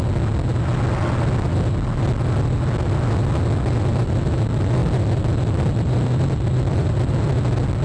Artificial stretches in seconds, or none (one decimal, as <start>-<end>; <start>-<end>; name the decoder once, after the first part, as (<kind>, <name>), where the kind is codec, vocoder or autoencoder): 4.8-7.1 (vocoder, BigVGAN v2)